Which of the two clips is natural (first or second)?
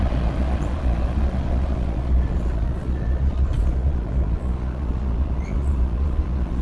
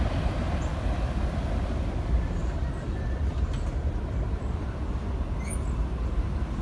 second